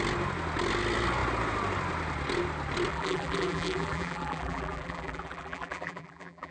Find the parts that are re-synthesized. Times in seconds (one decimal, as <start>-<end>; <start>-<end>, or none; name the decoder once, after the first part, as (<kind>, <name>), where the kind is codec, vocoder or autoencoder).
2.9-6.5 (vocoder, BigVGAN v2)